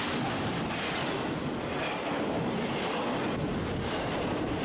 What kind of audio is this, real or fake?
real